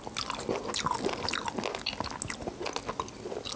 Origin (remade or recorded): recorded